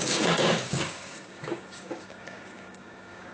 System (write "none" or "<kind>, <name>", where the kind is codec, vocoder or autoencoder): codec, DAC